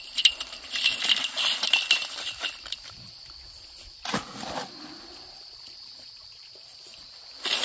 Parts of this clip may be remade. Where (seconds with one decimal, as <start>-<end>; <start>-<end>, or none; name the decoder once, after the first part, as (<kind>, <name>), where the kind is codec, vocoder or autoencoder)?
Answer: 0.0-7.6 (vocoder, BigVGAN v2)